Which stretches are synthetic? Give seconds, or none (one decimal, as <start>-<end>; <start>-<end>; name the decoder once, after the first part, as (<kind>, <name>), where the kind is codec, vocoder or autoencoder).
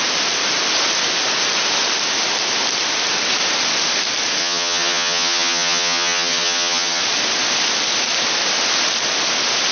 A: 4.4-7.0 (vocoder, HiFi-GAN)